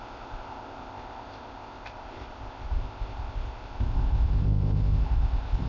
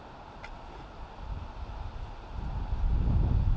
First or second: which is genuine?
second